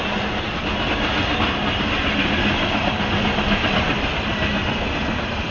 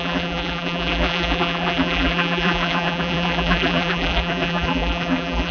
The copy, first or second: second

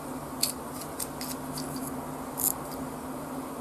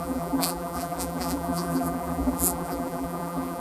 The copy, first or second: second